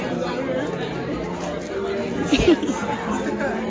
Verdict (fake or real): real